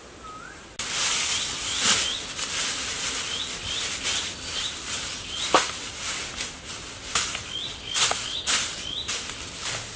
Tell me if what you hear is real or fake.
real